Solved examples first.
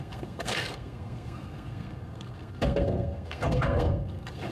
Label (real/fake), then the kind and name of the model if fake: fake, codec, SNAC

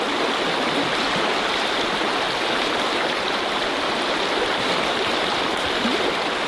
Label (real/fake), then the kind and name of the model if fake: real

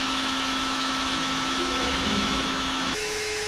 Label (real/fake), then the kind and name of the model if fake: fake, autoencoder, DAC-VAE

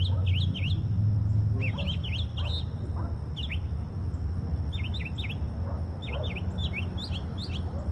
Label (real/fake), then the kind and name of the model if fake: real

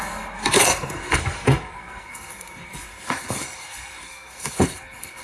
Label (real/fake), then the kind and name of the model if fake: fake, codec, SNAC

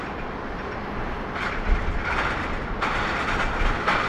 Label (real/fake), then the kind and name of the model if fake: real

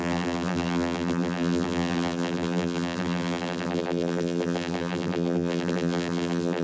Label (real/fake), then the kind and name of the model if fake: fake, vocoder, BigVGAN v2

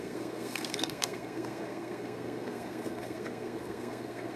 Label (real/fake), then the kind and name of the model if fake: fake, codec, SNAC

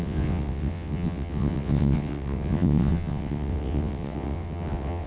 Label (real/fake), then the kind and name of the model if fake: fake, vocoder, WaveNeXt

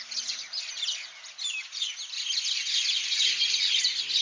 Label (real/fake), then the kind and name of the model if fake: real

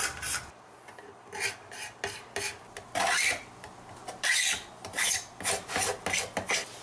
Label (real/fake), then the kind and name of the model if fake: real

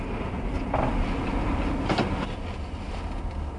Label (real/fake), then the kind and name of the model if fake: real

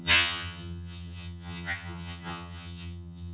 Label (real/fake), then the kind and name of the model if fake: fake, vocoder, HiFi-GAN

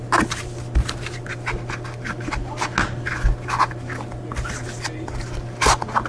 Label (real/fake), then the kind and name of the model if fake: real